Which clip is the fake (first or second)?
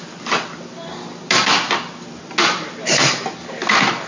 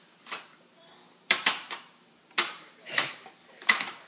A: second